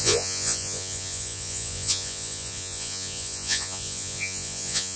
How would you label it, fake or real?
fake